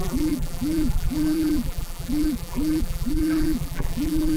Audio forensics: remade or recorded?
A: remade